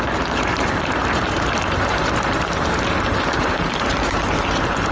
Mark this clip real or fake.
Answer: fake